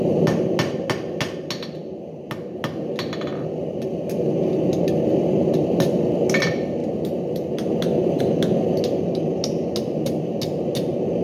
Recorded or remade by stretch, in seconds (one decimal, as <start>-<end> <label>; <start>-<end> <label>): 0.0-11.2 recorded